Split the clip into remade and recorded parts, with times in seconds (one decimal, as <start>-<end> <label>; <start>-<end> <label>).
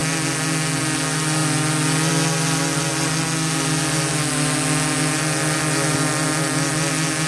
0.0-7.3 recorded